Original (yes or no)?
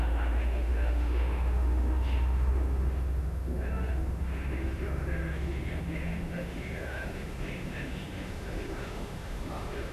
no